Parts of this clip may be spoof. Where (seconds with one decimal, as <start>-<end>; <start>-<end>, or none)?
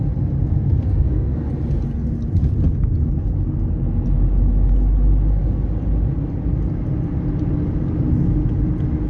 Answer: 0.4-1.5